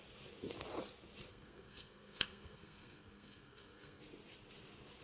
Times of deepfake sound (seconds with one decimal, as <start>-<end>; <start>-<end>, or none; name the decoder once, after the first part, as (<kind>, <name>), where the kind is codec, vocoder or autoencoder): 1.3-4.0 (codec, SNAC)